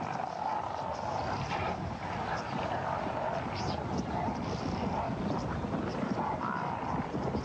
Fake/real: real